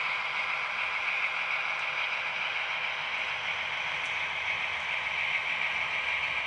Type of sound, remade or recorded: recorded